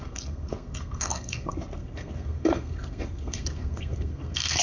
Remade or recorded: remade